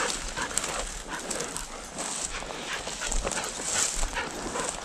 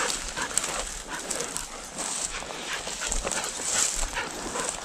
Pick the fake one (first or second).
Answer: second